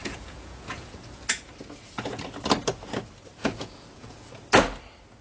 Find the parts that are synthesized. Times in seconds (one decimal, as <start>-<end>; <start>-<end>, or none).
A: 0.0-1.4; 3.4-4.3

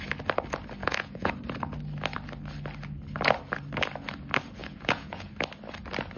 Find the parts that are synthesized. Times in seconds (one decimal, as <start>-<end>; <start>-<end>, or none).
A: 0.8-1.3; 4.6-5.3

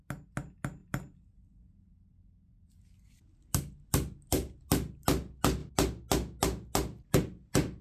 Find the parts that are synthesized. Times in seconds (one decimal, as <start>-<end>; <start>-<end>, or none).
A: none

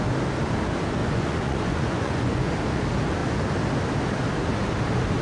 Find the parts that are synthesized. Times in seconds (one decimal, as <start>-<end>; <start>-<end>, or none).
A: 1.0-2.5